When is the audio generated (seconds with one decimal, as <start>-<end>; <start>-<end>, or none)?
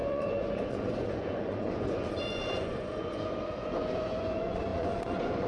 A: 0.0-5.5